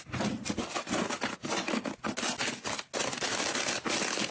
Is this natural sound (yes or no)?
yes